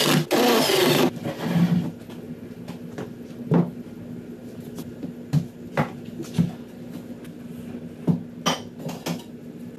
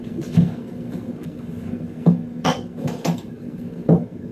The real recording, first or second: first